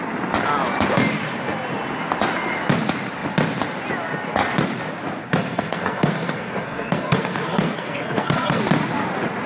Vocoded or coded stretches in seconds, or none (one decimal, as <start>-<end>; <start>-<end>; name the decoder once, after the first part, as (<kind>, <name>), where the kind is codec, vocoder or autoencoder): 5.2-8.6 (codec, SNAC)